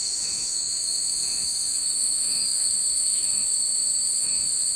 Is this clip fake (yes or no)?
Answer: yes